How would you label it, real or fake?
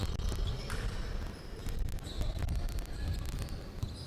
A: real